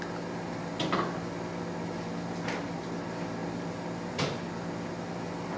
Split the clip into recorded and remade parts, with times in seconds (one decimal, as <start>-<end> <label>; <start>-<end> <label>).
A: 0.0-5.6 recorded